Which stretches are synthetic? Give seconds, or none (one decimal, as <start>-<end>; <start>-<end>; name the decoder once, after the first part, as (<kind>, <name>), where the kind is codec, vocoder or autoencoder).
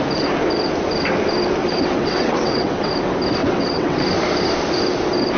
1.6-2.9 (vocoder, WaveNeXt); 3.4-4.0